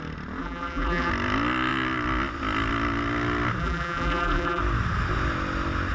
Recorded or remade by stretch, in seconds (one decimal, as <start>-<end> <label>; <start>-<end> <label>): 0.0-0.4 recorded; 0.4-1.1 remade; 1.1-3.6 recorded; 3.6-4.6 remade; 4.6-5.9 recorded